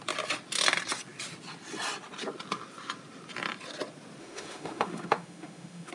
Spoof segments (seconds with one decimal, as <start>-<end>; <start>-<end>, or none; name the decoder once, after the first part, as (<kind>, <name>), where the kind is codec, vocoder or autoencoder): 4.2-5.9 (autoencoder, DAC-VAE)

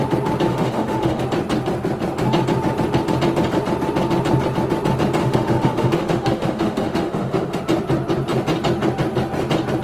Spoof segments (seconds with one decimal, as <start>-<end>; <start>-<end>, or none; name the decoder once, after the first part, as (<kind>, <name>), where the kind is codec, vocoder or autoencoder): 0.5-1.2 (autoencoder, DAC-VAE); 5.2-7.6

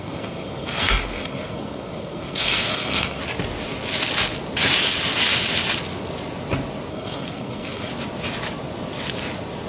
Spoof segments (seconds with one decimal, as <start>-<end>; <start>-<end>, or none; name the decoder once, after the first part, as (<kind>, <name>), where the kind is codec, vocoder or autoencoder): 0.0-3.2 (codec, SNAC); 6.9-7.9

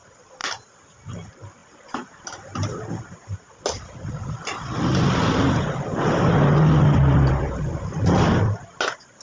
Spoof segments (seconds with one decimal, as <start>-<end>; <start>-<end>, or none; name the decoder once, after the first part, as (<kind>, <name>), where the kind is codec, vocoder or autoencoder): none

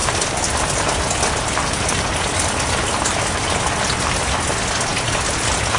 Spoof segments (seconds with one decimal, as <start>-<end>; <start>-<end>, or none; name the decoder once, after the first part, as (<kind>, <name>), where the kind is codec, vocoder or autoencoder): none

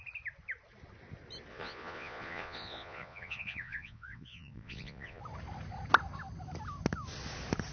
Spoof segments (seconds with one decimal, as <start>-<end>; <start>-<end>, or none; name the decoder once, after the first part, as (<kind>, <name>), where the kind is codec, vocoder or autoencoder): 1.5-5.2 (vocoder, Vocos)